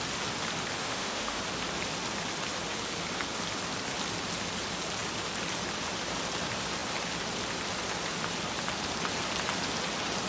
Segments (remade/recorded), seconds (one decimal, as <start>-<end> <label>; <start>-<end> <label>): 0.0-0.8 recorded; 0.8-1.4 remade; 1.4-10.3 recorded